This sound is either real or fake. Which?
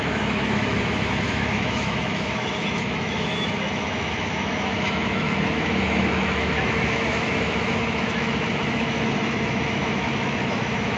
fake